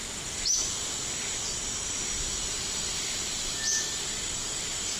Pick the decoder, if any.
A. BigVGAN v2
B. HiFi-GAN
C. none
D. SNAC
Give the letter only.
A